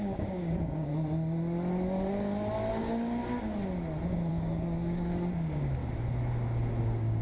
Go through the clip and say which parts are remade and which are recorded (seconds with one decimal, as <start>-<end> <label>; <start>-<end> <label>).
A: 0.0-0.9 remade; 0.9-2.7 recorded; 2.7-3.2 remade; 3.2-4.3 recorded; 4.3-5.8 remade; 5.8-6.8 recorded; 6.8-7.2 remade